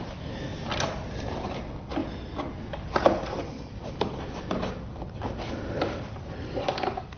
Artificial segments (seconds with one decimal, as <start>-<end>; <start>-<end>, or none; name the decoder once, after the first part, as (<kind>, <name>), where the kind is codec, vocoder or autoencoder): none